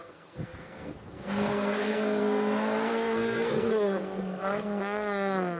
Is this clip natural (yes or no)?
no